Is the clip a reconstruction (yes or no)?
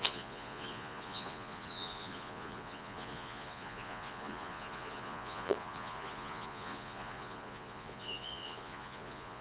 yes